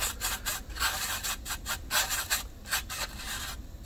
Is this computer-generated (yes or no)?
no